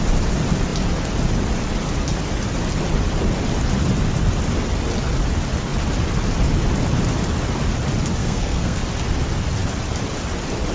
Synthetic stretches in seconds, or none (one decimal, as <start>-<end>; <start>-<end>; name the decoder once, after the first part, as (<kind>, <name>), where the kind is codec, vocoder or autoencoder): 8.2-8.8 (codec, SNAC)